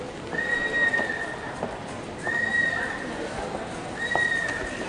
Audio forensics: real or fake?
real